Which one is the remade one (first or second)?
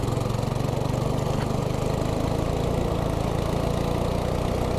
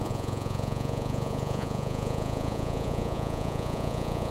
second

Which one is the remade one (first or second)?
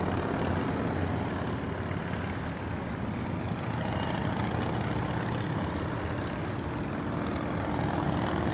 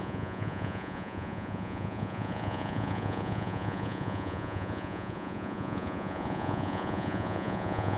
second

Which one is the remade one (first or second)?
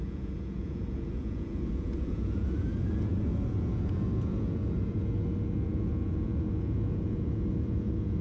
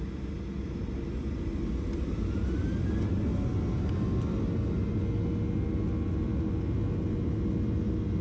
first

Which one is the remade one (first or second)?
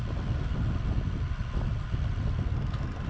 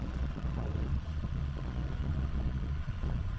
second